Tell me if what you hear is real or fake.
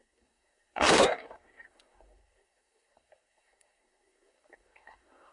fake